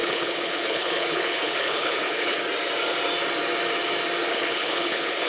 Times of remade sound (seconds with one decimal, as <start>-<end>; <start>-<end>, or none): 0.0-2.4; 4.3-5.3